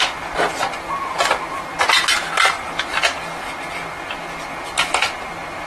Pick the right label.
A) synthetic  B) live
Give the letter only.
B